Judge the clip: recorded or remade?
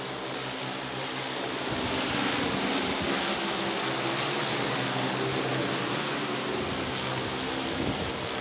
recorded